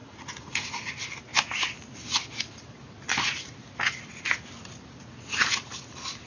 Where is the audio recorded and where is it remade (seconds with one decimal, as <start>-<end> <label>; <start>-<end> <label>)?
0.0-0.9 remade; 0.9-6.3 recorded